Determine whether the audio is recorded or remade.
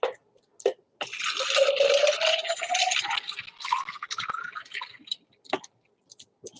recorded